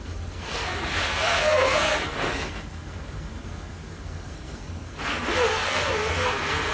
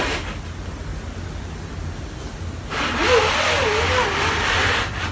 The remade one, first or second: first